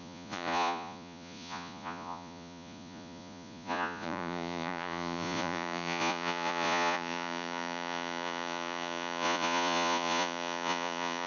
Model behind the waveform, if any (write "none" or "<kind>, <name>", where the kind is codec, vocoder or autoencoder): vocoder, Vocos